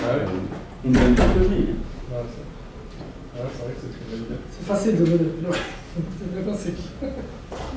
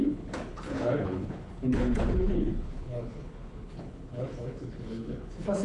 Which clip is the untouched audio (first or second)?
first